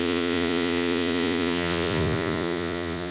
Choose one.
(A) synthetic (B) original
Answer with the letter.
A